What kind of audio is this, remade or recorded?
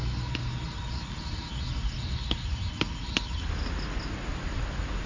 recorded